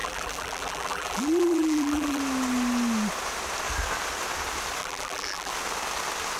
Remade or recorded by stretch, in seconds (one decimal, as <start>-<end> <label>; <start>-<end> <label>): 0.0-2.2 remade; 2.2-4.8 recorded; 4.8-5.5 remade; 5.5-6.4 recorded